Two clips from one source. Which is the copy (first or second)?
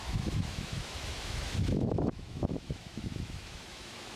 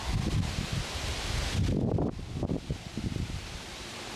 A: first